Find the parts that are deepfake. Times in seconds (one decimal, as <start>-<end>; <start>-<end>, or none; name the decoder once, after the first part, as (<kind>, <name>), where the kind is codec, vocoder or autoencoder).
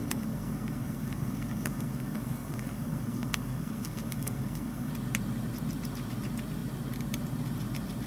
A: 0.0-4.9 (codec, SNAC)